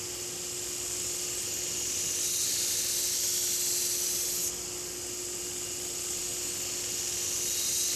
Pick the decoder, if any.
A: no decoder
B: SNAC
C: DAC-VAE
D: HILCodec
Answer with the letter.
A